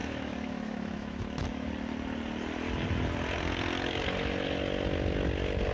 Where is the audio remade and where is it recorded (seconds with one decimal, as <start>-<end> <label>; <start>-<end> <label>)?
0.0-1.7 remade; 1.7-5.7 recorded